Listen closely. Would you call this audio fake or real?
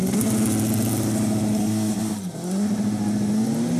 real